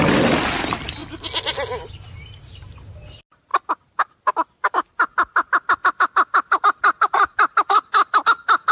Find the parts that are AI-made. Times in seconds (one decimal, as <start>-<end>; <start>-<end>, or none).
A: none